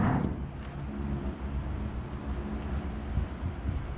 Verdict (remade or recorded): recorded